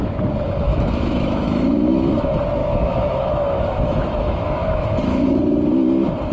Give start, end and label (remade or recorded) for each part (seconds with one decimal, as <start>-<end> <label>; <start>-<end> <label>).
0.0-0.7 recorded; 0.7-2.1 remade; 2.1-2.6 recorded; 2.6-5.4 remade; 5.4-6.3 recorded